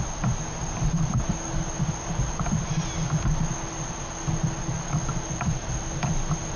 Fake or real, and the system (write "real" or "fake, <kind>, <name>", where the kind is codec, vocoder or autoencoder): real